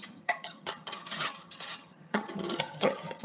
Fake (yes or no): yes